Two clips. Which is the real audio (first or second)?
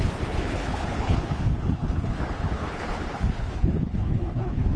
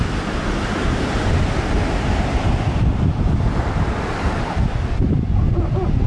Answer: second